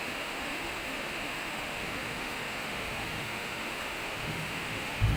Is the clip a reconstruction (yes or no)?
yes